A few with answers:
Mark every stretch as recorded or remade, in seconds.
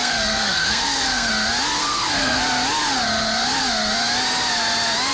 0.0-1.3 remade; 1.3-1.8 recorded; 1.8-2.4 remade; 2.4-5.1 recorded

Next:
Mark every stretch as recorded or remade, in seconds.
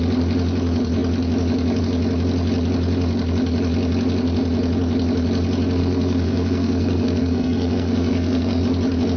0.0-5.8 recorded; 5.8-8.6 remade; 8.6-9.2 recorded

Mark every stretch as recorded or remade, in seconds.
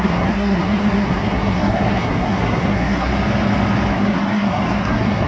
0.0-3.1 remade; 3.1-3.9 recorded; 3.9-5.3 remade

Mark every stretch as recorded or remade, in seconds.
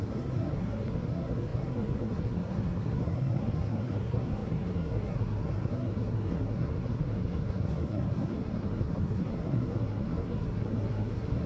0.0-11.5 remade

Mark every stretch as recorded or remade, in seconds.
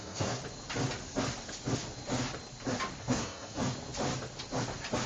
0.0-0.4 remade; 0.4-3.0 recorded; 3.0-3.6 remade; 3.6-5.1 recorded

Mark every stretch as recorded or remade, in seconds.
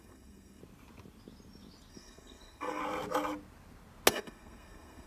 0.0-0.6 remade; 0.6-1.9 recorded; 1.9-2.8 remade; 2.8-4.1 recorded; 4.1-5.1 remade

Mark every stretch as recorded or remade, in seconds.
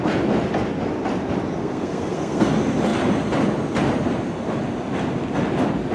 0.0-1.6 recorded; 1.6-2.5 remade; 2.5-5.9 recorded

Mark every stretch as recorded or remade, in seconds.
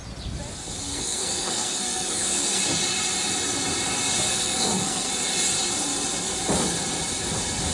0.0-0.9 recorded; 0.9-2.6 remade; 2.6-4.3 recorded; 4.3-5.1 remade; 5.1-7.7 recorded